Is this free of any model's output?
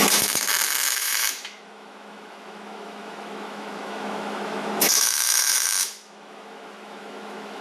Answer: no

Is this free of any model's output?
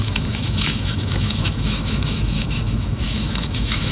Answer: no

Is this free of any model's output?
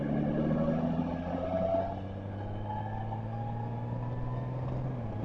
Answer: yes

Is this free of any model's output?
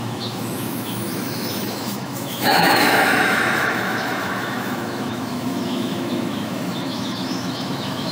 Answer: no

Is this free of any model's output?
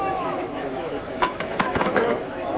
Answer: no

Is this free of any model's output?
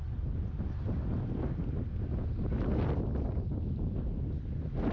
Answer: yes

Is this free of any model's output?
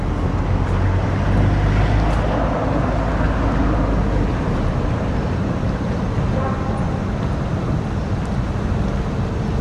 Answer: yes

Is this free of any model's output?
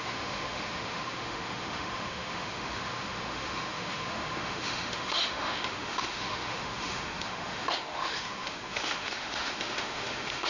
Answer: no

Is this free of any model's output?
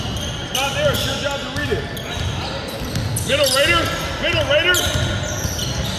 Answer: yes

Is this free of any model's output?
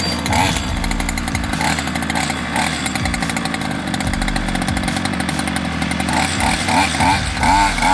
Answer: yes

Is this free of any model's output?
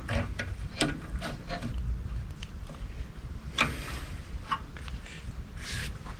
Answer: yes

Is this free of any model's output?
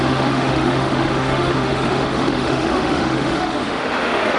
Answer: no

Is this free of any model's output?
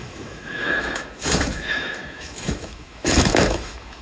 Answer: no